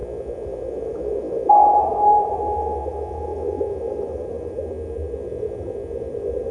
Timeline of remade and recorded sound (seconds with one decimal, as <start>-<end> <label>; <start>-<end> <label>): 0.0-3.9 recorded; 3.9-5.3 remade; 5.3-6.1 recorded; 6.1-6.5 remade